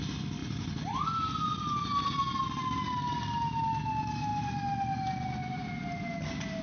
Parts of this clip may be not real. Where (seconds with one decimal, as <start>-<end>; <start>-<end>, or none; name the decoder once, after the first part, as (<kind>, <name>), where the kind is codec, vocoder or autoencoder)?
0.4-1.2 (vocoder, BigVGAN v2)